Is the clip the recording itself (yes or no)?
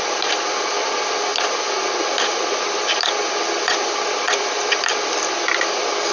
yes